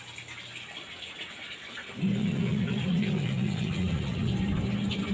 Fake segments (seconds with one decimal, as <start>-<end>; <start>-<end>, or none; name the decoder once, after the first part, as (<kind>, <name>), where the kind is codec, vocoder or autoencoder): 2.2-4.3 (vocoder, Vocos)